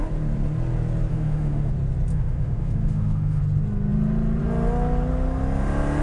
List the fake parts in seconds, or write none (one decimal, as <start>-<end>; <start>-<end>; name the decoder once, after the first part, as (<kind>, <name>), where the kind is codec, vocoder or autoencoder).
1.1-1.7 (autoencoder, DAC-VAE); 2.1-3.4